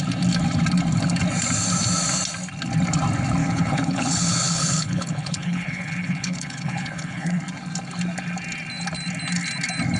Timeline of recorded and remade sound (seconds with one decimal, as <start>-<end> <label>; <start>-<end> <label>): 0.0-3.4 recorded; 3.4-7.4 remade; 7.4-10.0 recorded